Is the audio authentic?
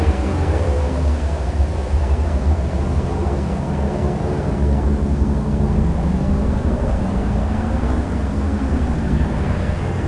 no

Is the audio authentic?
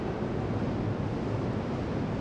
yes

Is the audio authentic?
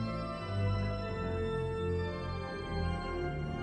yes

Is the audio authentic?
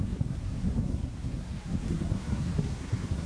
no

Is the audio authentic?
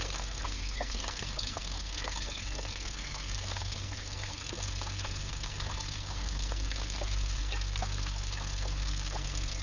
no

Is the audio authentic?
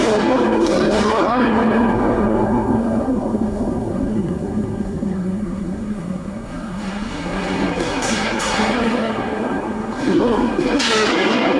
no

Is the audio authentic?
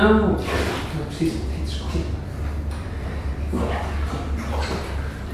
yes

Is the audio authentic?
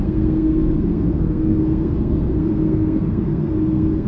no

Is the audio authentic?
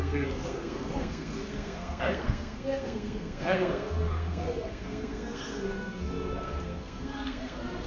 no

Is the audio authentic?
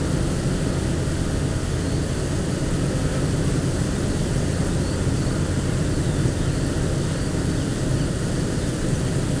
yes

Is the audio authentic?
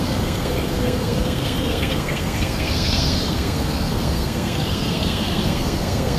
no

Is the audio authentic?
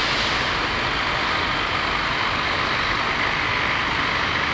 yes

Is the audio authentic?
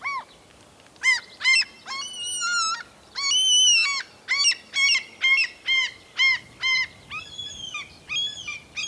yes